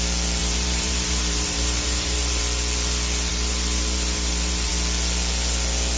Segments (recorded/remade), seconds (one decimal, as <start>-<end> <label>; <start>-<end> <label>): 0.0-0.4 recorded; 0.4-2.4 remade; 2.4-3.3 recorded; 3.3-4.7 remade; 4.7-6.0 recorded